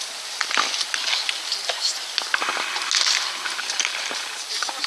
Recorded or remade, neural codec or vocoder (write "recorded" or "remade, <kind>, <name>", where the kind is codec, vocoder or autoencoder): recorded